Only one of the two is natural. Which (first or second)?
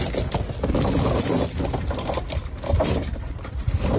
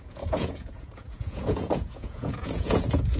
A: first